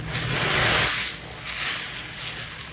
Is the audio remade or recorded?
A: recorded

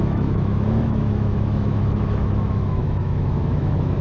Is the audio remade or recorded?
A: remade